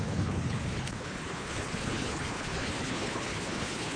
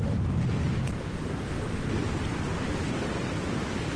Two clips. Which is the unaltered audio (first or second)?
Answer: second